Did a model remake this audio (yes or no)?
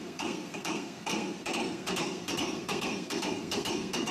yes